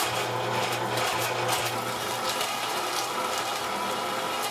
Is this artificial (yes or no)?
no